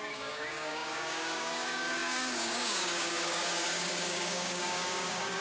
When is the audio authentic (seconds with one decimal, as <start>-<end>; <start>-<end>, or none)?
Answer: none